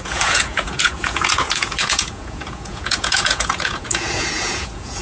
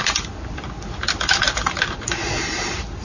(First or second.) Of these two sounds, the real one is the second